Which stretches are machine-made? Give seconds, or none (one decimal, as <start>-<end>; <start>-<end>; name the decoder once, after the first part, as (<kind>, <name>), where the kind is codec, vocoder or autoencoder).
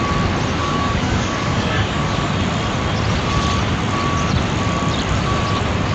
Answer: 0.6-2.3 (codec, DAC)